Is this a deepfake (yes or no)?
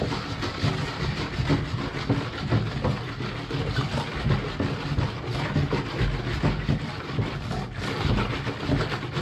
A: no